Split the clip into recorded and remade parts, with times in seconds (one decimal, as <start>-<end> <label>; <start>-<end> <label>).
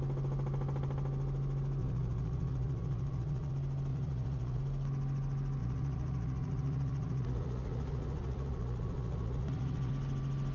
0.0-1.8 recorded; 1.8-3.5 remade; 3.5-3.9 recorded; 3.9-4.6 remade; 4.6-5.6 recorded; 5.6-9.9 remade; 9.9-10.5 recorded